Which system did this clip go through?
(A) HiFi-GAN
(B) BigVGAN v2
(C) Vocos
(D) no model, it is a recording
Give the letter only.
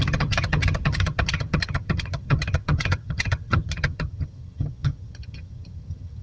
A